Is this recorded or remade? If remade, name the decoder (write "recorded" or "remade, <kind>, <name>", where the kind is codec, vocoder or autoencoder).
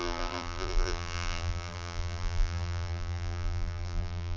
remade, vocoder, BigVGAN v2